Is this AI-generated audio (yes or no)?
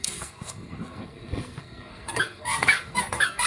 yes